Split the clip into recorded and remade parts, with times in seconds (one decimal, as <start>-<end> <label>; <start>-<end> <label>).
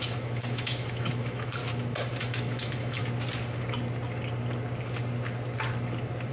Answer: 0.0-1.6 remade; 1.6-2.2 recorded; 2.2-3.0 remade; 3.0-6.3 recorded